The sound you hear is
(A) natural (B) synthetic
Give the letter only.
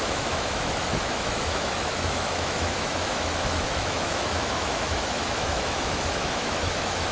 B